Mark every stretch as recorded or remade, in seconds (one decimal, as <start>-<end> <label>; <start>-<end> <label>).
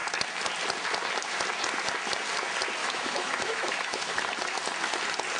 0.0-2.8 recorded; 2.8-4.2 remade; 4.2-5.4 recorded